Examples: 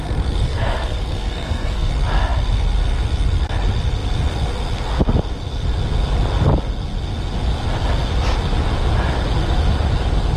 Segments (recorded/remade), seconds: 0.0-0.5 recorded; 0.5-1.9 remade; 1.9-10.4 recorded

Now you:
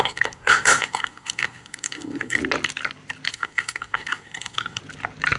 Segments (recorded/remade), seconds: 0.0-2.4 remade; 2.4-3.3 recorded; 3.3-4.8 remade; 4.8-5.4 recorded

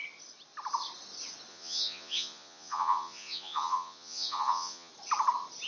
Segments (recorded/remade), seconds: 0.0-1.5 recorded; 1.5-4.9 remade; 4.9-5.7 recorded

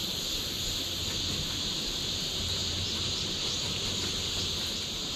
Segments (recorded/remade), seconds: 0.0-1.9 recorded; 1.9-5.2 remade

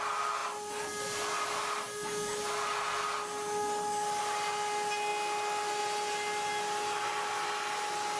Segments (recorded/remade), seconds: 0.0-8.2 recorded

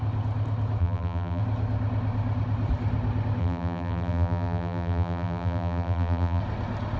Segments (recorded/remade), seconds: 0.0-0.8 recorded; 0.8-1.4 remade; 1.4-3.4 recorded; 3.4-6.4 remade; 6.4-7.0 recorded

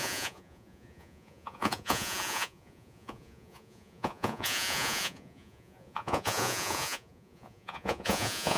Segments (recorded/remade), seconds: 0.0-8.6 remade